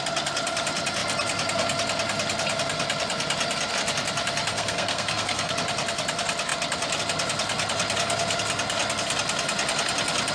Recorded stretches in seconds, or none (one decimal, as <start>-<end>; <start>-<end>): 0.0-4.5; 5.5-10.3